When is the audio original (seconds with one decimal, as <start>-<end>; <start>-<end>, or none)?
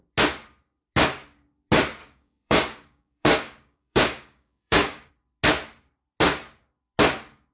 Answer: 0.0-2.0; 5.1-7.5